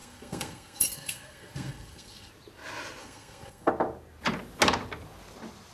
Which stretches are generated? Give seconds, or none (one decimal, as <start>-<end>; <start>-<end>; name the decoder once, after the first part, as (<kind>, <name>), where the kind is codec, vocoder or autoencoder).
0.0-2.3 (codec, SNAC); 3.0-3.7